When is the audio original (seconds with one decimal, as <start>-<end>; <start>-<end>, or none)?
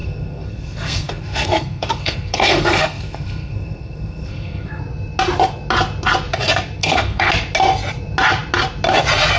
4.8-6.8; 7.3-9.4